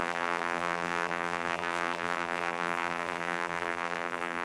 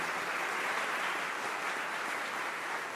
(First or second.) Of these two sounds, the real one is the second